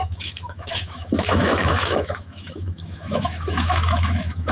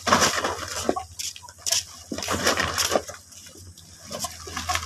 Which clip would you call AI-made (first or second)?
first